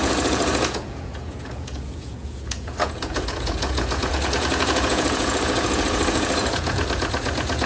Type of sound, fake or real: fake